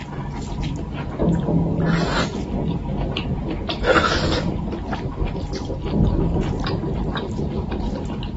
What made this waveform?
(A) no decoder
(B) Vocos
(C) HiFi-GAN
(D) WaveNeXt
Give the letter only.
A